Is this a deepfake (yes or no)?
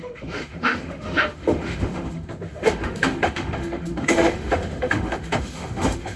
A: yes